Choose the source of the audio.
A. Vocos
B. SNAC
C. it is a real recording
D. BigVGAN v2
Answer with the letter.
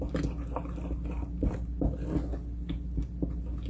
C